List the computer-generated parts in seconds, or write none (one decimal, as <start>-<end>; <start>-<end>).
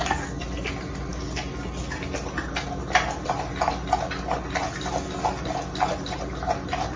none